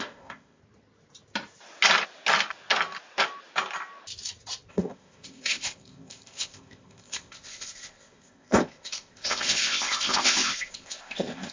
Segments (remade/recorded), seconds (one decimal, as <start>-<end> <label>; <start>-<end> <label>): 0.0-0.6 remade; 0.6-4.7 recorded; 4.7-11.5 remade